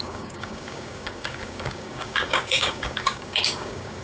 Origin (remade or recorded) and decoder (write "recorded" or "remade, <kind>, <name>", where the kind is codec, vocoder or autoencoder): remade, codec, DAC